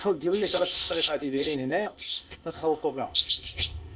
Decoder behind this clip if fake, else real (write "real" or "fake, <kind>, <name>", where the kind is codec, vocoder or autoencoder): fake, codec, ZipCodec